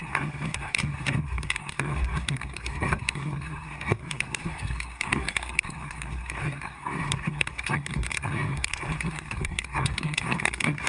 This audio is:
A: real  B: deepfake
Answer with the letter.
B